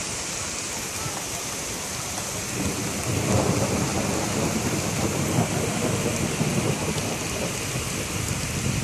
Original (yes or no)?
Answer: yes